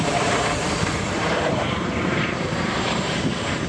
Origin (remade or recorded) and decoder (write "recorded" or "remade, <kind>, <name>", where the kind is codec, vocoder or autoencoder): remade, vocoder, BigVGAN v2